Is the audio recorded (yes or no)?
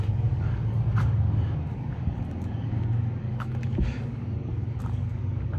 no